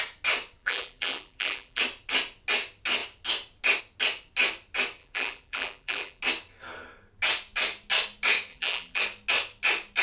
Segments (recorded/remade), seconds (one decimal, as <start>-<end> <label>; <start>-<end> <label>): 0.0-0.6 recorded; 0.6-1.8 remade; 1.8-5.0 recorded; 5.0-6.2 remade; 6.2-8.5 recorded; 8.5-9.0 remade; 9.0-10.0 recorded

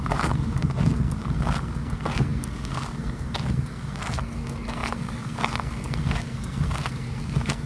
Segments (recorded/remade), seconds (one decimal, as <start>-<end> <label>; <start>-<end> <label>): 0.0-7.7 remade

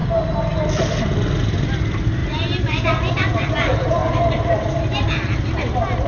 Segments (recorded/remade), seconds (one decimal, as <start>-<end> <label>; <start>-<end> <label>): 0.0-6.1 recorded

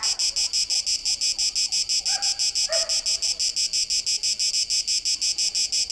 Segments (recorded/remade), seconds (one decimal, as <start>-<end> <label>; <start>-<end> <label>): 0.0-5.9 recorded